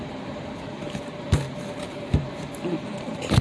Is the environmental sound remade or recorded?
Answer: remade